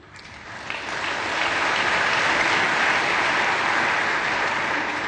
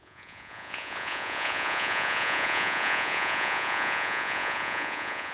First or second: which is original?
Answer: first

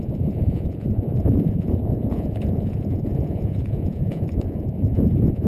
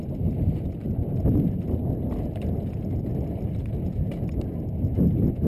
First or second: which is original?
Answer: second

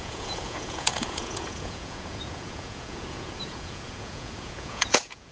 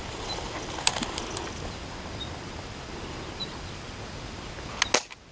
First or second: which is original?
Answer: second